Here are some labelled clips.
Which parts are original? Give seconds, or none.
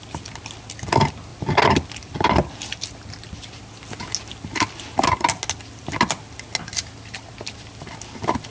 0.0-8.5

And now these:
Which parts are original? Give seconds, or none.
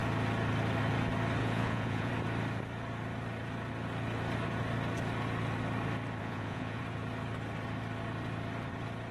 0.0-1.4; 2.1-6.2; 6.8-9.1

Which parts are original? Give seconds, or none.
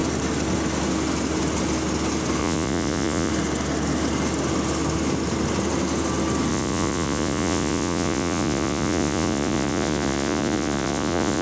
0.0-2.4; 3.3-6.5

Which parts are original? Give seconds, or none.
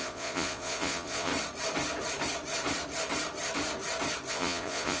1.3-4.3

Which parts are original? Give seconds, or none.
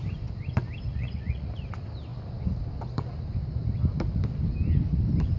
0.0-0.9; 1.5-5.4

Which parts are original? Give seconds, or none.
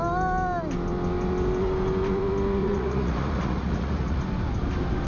0.0-2.6; 4.2-5.1